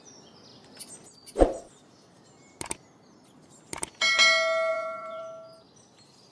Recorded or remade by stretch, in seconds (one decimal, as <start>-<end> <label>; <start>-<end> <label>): 0.0-4.7 recorded; 4.7-5.2 remade; 5.2-6.3 recorded